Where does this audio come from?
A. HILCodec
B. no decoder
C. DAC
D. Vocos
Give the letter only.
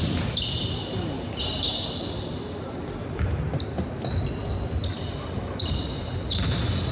B